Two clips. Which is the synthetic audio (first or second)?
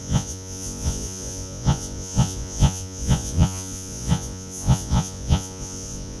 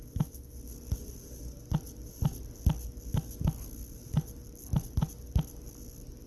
first